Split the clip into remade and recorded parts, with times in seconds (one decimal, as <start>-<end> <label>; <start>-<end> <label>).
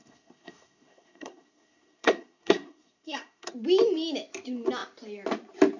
0.0-3.5 remade; 3.5-5.8 recorded